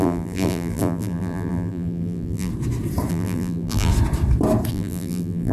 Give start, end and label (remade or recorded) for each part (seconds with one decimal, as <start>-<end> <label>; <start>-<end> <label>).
0.0-2.5 remade; 2.5-3.1 recorded; 3.1-3.9 remade; 3.9-4.7 recorded; 4.7-5.5 remade